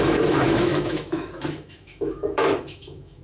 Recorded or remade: remade